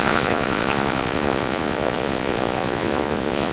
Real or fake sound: fake